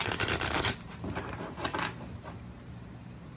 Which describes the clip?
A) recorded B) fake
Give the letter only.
B